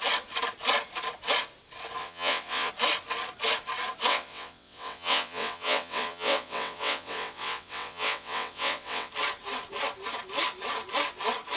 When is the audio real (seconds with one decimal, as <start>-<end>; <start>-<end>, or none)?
0.0-2.0; 2.7-4.1; 9.1-11.6